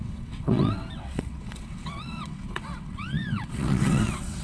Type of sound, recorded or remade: remade